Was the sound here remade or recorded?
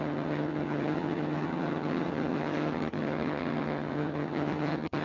remade